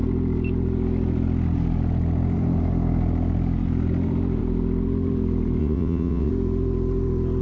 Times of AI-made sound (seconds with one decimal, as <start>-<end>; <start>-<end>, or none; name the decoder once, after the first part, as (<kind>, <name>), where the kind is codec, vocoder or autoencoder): 5.6-6.3 (vocoder, WaveNeXt)